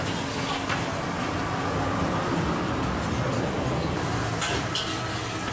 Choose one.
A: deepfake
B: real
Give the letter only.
B